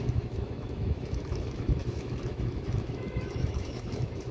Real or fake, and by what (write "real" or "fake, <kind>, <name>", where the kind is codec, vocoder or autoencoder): fake, autoencoder, DAC-VAE